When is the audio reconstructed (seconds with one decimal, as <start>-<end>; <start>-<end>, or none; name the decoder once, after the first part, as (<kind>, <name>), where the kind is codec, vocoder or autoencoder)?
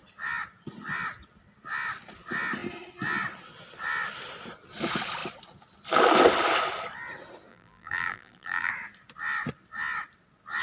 7.5-8.7 (vocoder, BigVGAN v2)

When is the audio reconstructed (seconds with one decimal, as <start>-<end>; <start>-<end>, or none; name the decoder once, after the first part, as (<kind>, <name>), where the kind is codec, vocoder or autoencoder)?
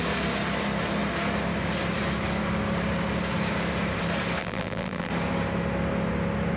4.4-5.1 (vocoder, BigVGAN v2)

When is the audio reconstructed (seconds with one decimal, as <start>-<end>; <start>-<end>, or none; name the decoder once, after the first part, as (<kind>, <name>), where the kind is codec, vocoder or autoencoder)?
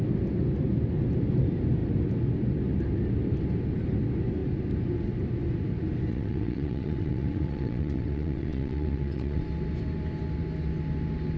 6.1-9.4 (vocoder, WaveNeXt)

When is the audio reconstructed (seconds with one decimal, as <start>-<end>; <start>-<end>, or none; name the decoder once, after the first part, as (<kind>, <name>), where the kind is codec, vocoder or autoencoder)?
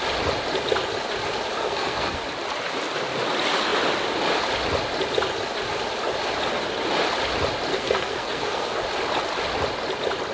1.6-2.2 (codec, SNAC); 7.7-8.8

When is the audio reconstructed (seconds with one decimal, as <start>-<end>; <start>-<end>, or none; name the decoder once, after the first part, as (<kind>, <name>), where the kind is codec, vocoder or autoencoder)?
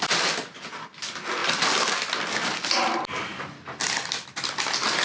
none